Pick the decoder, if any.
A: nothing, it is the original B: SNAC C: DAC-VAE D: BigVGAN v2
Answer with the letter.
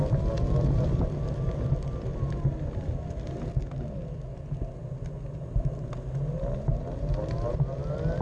A